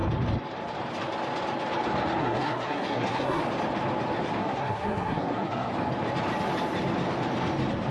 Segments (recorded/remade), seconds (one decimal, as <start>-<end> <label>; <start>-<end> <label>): 0.0-2.2 recorded; 2.2-3.4 remade; 3.4-4.4 recorded; 4.4-5.7 remade; 5.7-7.9 recorded